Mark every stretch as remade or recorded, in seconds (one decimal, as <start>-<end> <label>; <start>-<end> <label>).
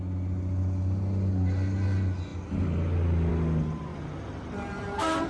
0.0-3.9 recorded; 3.9-5.3 remade